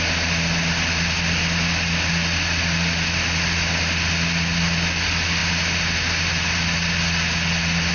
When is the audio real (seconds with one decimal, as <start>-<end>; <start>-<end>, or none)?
0.0-7.9